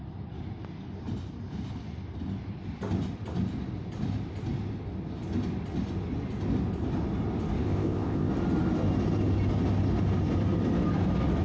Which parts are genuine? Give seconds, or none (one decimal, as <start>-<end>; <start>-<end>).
0.0-7.6; 8.3-11.4